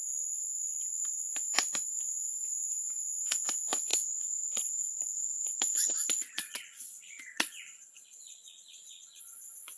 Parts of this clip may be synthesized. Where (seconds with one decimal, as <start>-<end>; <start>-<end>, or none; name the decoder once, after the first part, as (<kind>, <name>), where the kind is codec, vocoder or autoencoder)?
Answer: 3.9-9.2 (vocoder, Vocos)